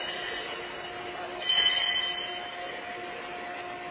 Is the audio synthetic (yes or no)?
no